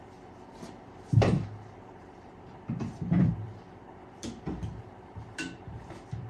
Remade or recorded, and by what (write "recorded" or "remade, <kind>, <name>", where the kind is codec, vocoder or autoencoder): remade, vocoder, BigVGAN v2